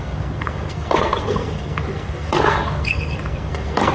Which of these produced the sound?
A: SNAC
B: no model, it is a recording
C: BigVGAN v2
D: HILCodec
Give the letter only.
A